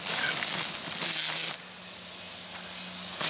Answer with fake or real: real